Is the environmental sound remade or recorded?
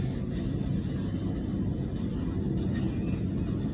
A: recorded